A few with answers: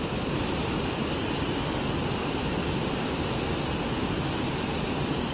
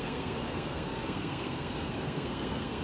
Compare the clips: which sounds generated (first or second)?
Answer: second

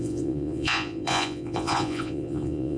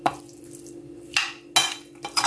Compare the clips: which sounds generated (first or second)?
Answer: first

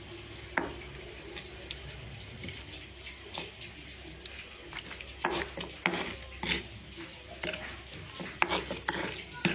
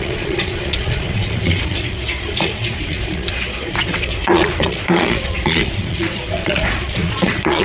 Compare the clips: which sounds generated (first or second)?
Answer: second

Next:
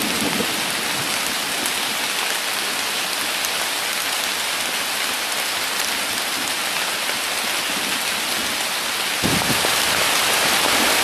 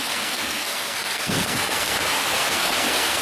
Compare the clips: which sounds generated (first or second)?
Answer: second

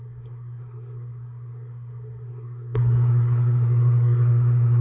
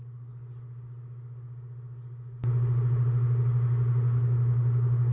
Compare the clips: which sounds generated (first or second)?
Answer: first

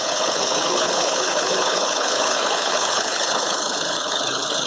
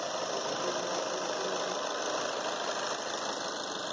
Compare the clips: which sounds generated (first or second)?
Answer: first